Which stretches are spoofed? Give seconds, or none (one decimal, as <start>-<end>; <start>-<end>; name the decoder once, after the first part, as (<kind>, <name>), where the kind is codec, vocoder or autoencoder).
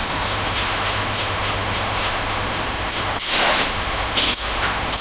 0.0-5.0 (autoencoder, DAC-VAE)